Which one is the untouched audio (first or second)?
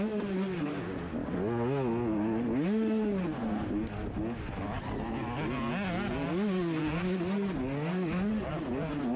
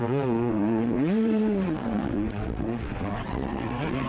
first